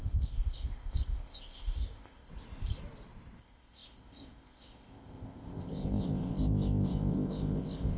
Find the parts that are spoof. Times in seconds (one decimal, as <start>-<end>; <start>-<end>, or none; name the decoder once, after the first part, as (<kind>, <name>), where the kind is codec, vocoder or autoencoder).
0.0-2.3 (codec, ZipCodec); 3.4-8.0